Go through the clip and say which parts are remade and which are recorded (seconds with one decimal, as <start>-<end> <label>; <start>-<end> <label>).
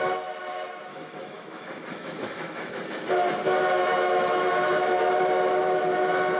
0.0-0.9 recorded; 0.9-2.7 remade; 2.7-3.8 recorded; 3.8-5.1 remade; 5.1-6.4 recorded